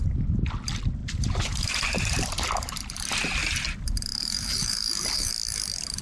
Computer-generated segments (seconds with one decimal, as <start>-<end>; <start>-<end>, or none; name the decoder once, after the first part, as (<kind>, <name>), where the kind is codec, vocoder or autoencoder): 1.0-2.8 (vocoder, BigVGAN v2); 4.1-5.3